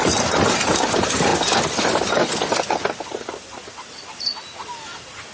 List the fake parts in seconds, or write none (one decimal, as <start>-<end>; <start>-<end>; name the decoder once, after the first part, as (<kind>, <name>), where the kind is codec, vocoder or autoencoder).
none